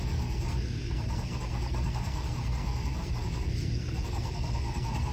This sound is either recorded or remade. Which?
remade